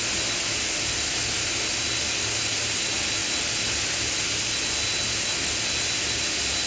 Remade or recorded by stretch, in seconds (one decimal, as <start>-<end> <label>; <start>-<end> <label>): 0.0-6.7 recorded

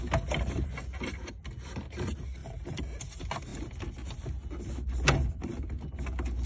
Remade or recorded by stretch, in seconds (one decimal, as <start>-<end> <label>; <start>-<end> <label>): 0.0-2.4 recorded; 2.4-3.0 remade; 3.0-6.5 recorded

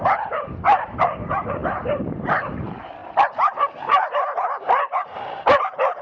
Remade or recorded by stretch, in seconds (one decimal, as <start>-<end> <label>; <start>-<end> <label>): 0.0-6.0 remade

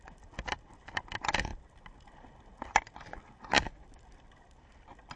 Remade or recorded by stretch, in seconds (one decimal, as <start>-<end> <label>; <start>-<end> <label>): 0.0-1.5 remade; 1.5-4.6 recorded; 4.6-5.2 remade

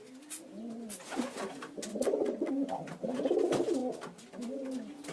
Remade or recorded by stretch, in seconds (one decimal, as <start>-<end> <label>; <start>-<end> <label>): 0.0-1.9 recorded; 1.9-2.5 remade; 2.5-5.1 recorded

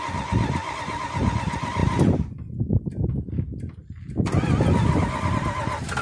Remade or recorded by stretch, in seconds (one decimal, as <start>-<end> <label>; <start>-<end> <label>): 0.0-6.0 recorded